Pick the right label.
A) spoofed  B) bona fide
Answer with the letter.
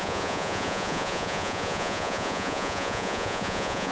A